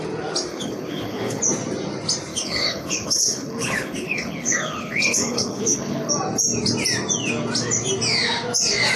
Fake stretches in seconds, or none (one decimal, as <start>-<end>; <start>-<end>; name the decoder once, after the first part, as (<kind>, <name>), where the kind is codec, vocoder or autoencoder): 0.5-1.4 (codec, HILCodec); 2.3-6.1